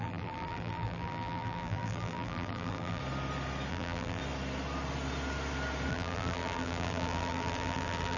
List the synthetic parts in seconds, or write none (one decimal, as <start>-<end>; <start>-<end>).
0.0-3.0; 3.7-4.2; 5.9-8.2